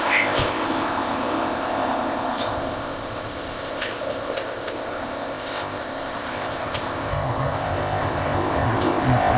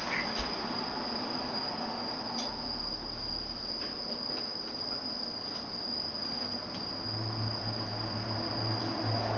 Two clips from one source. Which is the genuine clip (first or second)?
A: second